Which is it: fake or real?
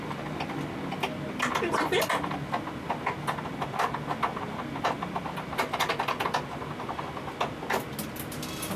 real